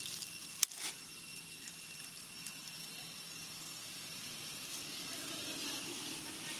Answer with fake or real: real